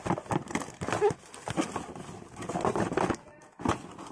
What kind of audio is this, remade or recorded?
recorded